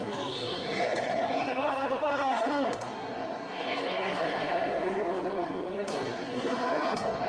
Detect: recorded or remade remade